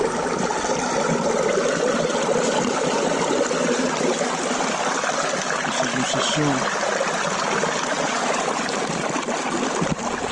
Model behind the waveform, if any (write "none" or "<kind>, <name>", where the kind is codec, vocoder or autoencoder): none